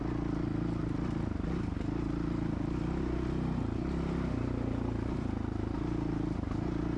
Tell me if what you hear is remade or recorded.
recorded